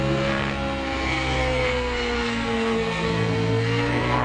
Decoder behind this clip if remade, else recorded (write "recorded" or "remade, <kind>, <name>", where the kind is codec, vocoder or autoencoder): remade, codec, SNAC